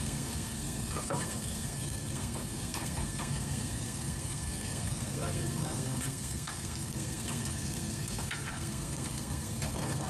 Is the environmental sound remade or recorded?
remade